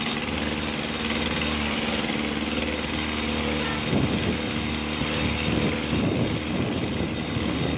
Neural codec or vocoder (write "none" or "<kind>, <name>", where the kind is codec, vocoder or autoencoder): none